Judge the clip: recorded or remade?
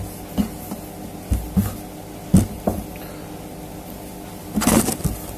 recorded